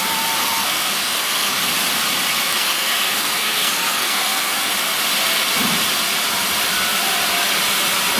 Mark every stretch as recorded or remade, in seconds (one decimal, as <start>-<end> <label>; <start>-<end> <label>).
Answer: 0.0-0.4 recorded; 0.4-1.6 remade; 1.6-2.3 recorded; 2.3-4.7 remade; 4.7-8.2 recorded